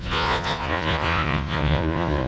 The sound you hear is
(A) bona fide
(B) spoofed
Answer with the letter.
B